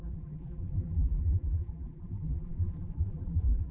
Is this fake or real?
fake